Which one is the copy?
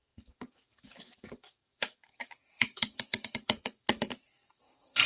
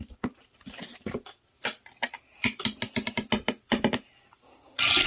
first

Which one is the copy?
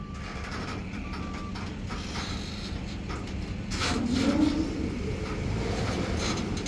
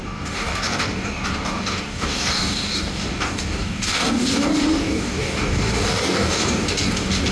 second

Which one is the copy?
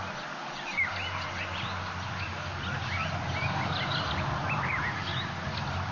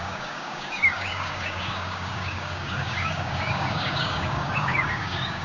second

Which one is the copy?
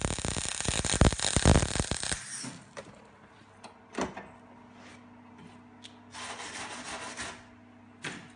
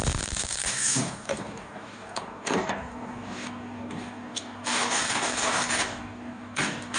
second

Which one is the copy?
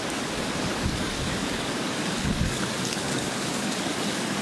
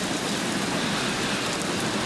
first